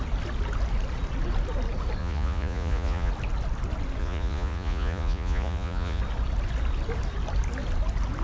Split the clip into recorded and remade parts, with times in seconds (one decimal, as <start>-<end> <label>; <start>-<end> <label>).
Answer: 0.0-2.0 recorded; 2.0-3.1 remade; 3.1-4.0 recorded; 4.0-6.0 remade; 6.0-8.2 recorded